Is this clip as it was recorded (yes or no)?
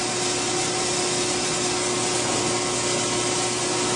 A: yes